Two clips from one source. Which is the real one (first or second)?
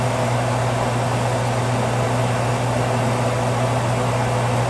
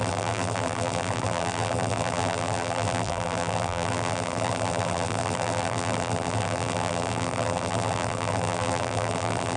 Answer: first